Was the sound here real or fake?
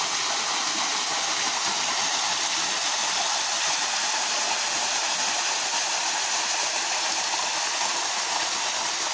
real